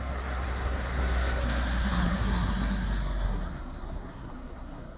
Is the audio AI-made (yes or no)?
yes